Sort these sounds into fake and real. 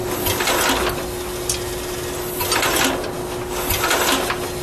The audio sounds real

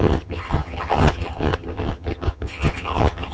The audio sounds fake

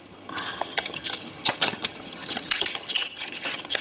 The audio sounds fake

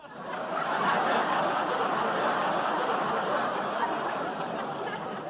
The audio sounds real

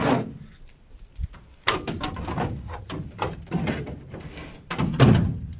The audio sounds fake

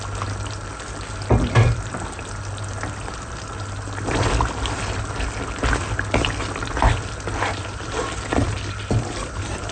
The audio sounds real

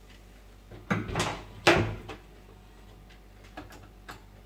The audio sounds real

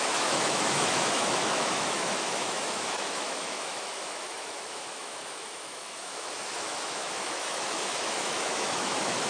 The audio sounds fake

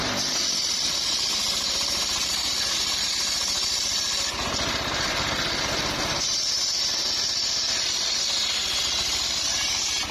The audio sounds fake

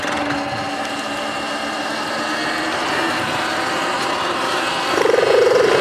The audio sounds real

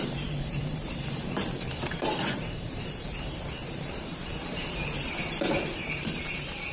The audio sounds fake